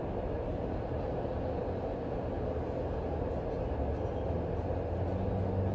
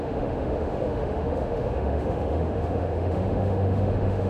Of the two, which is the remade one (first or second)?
second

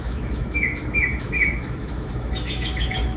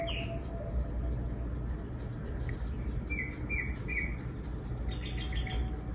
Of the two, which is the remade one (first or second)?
first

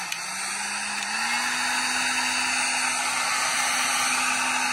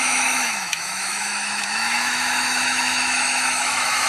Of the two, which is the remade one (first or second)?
second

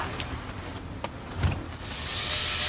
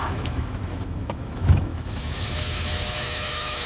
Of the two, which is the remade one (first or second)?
second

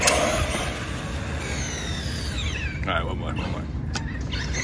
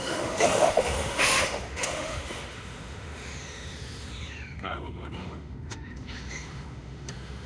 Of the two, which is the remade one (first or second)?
second